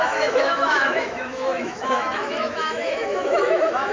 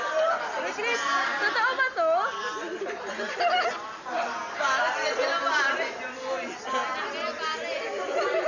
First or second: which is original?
second